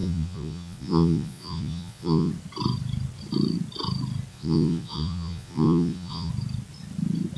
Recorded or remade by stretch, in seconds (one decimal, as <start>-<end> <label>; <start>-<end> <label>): 0.0-2.3 remade; 2.3-4.3 recorded; 4.3-6.3 remade; 6.3-7.4 recorded